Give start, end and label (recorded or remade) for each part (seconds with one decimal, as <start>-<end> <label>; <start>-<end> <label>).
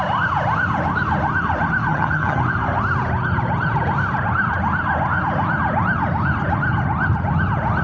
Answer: 0.0-1.9 recorded; 1.9-2.4 remade; 2.4-7.8 recorded